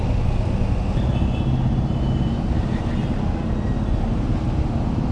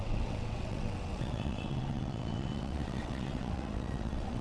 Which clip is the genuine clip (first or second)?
first